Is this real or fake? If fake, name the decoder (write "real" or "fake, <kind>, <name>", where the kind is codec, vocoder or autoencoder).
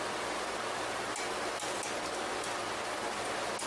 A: real